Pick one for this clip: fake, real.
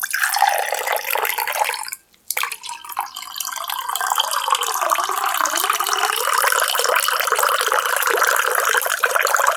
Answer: real